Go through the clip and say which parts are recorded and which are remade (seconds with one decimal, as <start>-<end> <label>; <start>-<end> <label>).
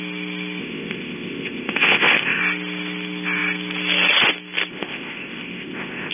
0.0-0.6 recorded; 0.6-2.4 remade; 2.4-4.7 recorded; 4.7-6.1 remade